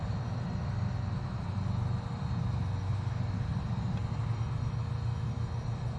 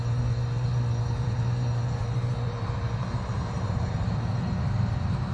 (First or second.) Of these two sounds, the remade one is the second